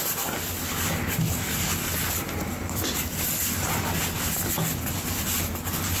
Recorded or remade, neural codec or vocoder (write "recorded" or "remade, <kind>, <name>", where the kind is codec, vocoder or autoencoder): recorded